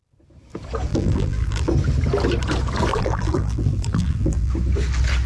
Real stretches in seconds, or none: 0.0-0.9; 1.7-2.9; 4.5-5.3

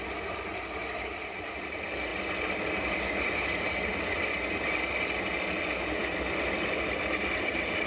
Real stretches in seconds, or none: 0.0-7.9

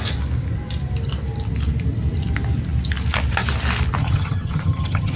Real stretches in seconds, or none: 0.0-4.0